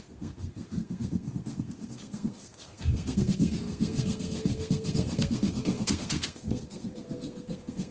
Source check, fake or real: fake